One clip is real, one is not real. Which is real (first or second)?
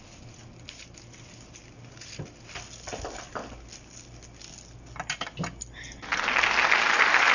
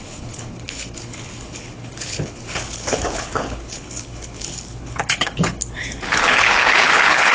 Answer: first